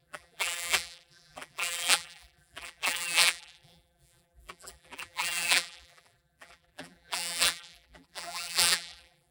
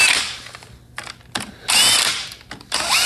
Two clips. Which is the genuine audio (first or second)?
second